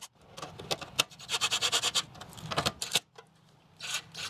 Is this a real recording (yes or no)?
yes